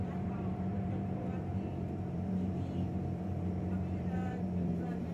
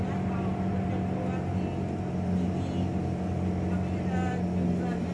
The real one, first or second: second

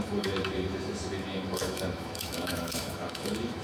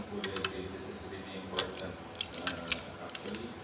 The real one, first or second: second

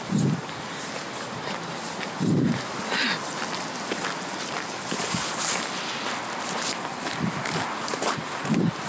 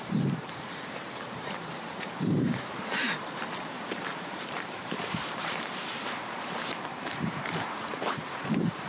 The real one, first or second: first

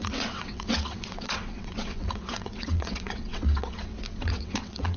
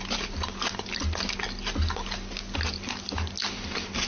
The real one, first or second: second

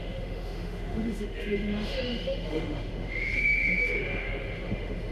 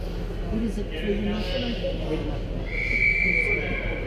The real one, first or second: second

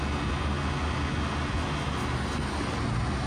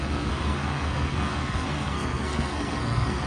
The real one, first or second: first